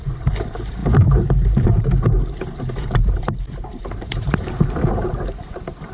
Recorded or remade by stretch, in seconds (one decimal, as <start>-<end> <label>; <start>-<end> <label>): 0.0-5.9 remade